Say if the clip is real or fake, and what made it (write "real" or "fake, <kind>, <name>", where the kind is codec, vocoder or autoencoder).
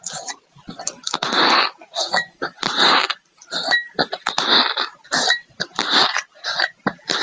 real